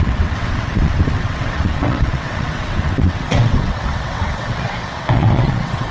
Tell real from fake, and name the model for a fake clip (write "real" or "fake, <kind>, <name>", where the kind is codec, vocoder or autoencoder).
fake, vocoder, WaveNeXt